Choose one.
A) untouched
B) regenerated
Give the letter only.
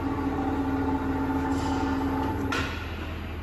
A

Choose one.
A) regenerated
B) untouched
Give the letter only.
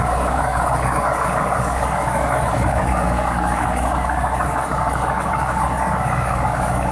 A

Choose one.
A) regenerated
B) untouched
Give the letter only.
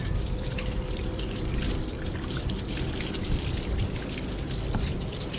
A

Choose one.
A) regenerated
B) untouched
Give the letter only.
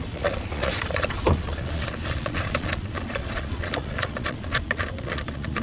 A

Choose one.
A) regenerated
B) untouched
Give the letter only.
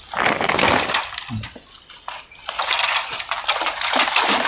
B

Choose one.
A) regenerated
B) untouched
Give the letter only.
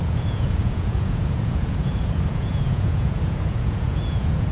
A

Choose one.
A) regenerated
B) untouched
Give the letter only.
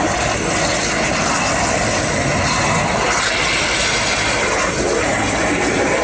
B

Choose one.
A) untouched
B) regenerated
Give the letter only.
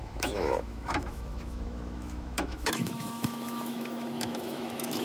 B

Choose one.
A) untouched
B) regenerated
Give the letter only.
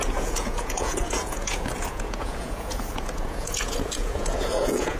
B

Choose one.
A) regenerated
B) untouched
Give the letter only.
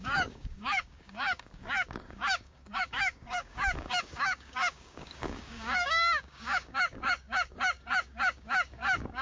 A